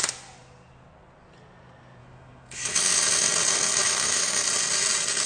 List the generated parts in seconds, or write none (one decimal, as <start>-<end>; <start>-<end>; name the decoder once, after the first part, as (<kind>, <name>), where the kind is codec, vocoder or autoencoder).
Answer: 2.0-2.8 (autoencoder, DAC-VAE); 3.8-4.4

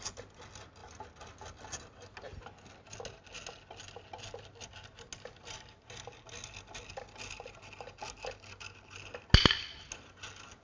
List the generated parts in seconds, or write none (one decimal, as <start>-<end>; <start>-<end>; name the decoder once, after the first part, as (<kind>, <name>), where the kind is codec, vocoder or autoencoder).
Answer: none

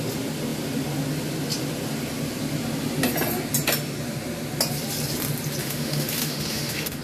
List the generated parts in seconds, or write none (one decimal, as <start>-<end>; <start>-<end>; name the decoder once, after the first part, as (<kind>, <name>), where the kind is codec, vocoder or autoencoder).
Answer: 5.6-7.0 (autoencoder, DAC-VAE)